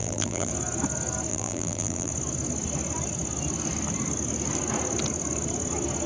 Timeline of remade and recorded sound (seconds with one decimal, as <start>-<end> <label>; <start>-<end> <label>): 0.0-0.5 remade; 0.5-1.3 recorded; 1.3-2.1 remade; 2.1-6.1 recorded